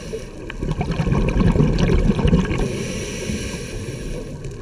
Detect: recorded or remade recorded